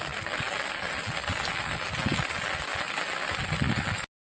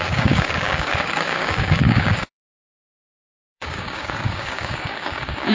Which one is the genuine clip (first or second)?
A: first